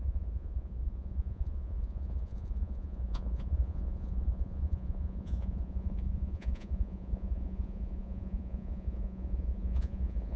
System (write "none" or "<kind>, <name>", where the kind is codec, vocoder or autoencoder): vocoder, Vocos